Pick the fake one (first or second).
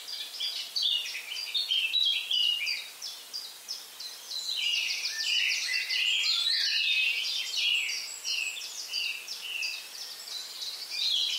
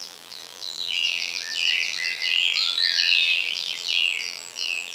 second